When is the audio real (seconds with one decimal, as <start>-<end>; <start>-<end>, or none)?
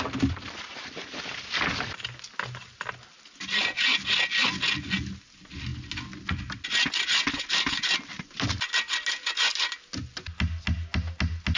0.0-11.6